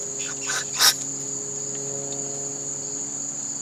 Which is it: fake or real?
real